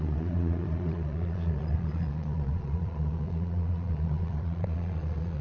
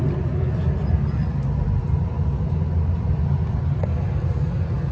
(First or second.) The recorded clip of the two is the second